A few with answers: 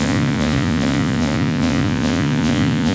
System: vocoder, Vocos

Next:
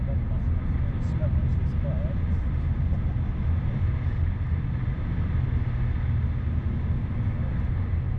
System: none